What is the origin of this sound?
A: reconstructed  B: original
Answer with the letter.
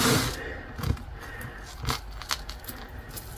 B